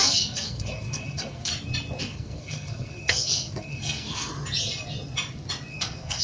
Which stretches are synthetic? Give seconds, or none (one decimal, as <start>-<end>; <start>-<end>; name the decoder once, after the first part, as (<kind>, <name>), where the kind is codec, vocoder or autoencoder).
0.0-1.5 (codec, SNAC); 2.0-4.3; 5.7-6.2